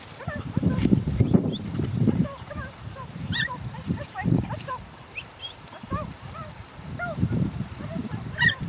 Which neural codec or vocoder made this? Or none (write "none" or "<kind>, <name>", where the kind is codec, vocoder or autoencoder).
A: vocoder, BigVGAN v2